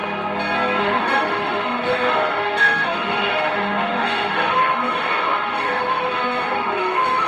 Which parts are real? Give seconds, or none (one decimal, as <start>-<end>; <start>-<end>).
0.0-0.8